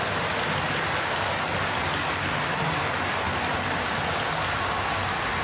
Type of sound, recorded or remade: recorded